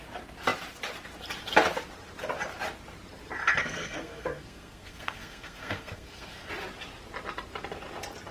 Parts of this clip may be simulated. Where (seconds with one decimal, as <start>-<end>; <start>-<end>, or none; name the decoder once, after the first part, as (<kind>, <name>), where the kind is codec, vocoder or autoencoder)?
3.6-6.5 (codec, SNAC)